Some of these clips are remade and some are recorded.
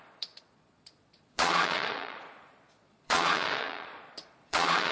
remade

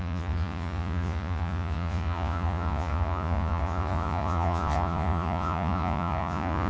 remade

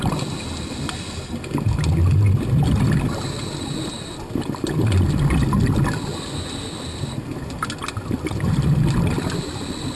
recorded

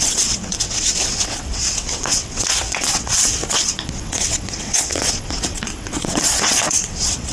remade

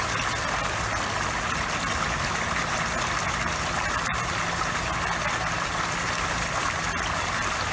recorded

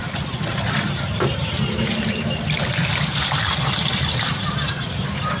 remade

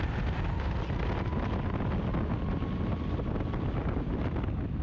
recorded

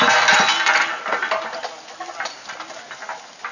recorded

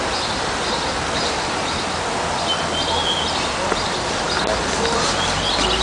recorded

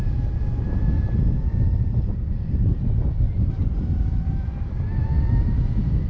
recorded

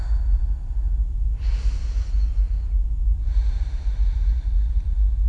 recorded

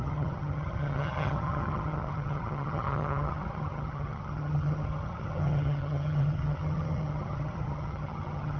remade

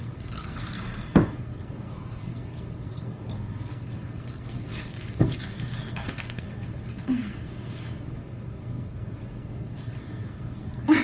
remade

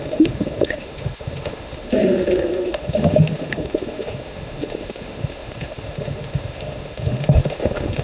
remade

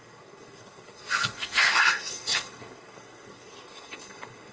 remade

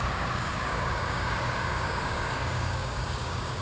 remade